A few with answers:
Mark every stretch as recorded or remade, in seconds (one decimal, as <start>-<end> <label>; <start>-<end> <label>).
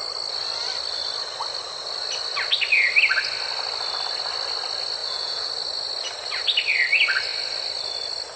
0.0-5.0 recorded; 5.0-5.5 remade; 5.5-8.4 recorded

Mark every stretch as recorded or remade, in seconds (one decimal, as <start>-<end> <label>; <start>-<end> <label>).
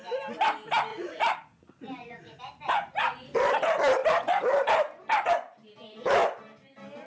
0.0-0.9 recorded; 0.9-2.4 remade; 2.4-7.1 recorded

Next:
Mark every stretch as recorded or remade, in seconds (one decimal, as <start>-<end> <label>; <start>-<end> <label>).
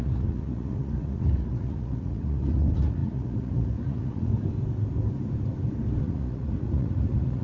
0.0-4.3 remade; 4.3-6.0 recorded; 6.0-7.4 remade